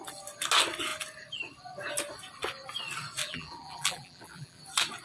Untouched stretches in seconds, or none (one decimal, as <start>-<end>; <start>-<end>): 0.0-3.2; 4.6-5.0